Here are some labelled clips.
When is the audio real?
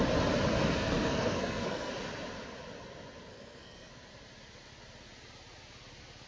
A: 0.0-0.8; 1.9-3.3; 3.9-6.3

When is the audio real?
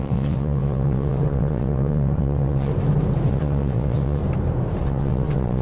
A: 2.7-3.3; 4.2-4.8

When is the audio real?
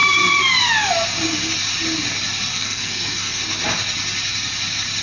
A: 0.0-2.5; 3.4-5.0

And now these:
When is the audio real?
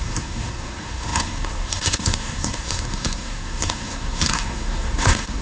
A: none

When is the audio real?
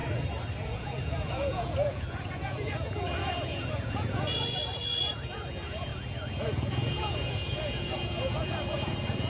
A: 0.0-0.6